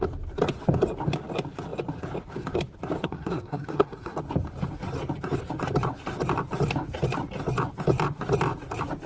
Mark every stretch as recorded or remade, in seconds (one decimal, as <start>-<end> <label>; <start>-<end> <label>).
0.0-3.0 recorded; 3.0-4.2 remade; 4.2-9.1 recorded